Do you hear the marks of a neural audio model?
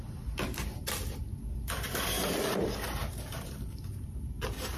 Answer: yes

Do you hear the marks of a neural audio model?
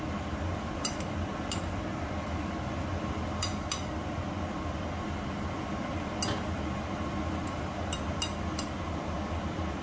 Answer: no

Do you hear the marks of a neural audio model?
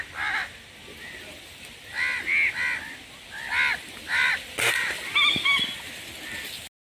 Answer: no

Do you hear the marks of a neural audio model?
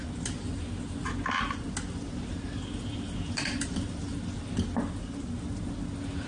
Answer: no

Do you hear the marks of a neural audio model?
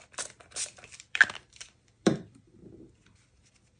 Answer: yes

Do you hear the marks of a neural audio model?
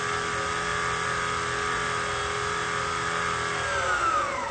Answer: no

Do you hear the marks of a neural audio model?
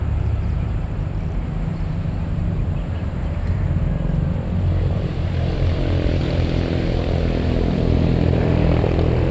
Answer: yes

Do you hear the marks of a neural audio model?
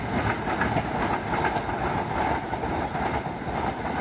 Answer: no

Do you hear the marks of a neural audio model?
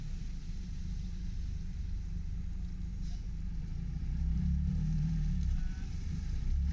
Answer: yes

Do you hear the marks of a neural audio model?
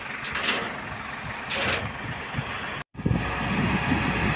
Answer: no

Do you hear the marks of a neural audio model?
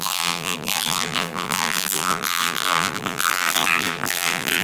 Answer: yes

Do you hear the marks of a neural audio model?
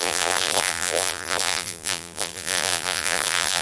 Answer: yes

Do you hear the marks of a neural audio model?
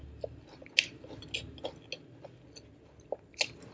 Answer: no